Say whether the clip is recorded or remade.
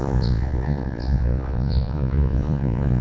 remade